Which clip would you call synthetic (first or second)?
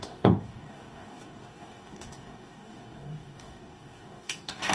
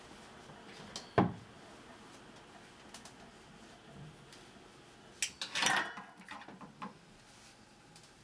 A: first